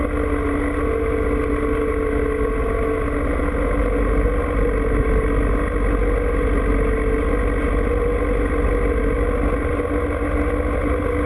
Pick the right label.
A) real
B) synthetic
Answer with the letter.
A